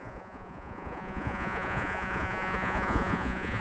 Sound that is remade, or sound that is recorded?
remade